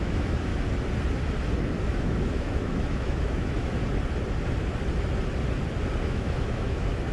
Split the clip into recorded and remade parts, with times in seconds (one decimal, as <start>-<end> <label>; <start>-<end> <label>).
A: 0.0-0.5 remade; 0.5-1.9 recorded; 1.9-3.8 remade; 3.8-6.0 recorded; 6.0-7.1 remade